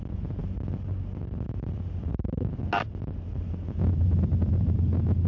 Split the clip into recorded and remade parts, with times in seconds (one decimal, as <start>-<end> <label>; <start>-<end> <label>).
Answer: 0.0-5.3 recorded